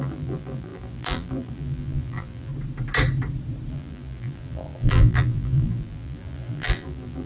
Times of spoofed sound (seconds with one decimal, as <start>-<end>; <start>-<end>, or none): 0.0-2.5; 3.7-7.3